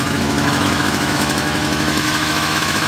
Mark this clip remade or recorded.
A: remade